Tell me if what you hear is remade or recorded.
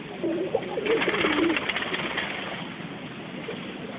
recorded